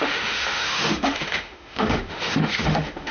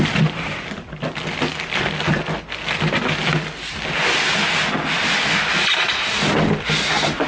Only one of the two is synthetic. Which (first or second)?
first